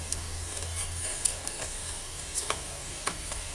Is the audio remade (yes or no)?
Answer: yes